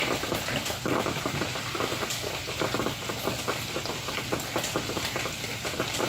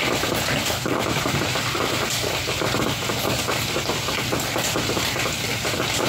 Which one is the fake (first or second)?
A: first